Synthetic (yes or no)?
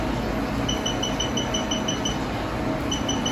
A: no